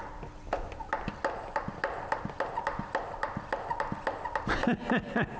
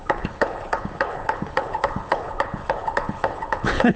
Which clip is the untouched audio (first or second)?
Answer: first